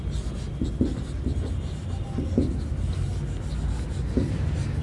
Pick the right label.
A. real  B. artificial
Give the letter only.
A